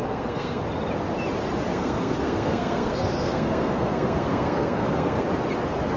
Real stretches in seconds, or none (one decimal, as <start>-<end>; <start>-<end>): 0.6-1.7; 5.3-6.0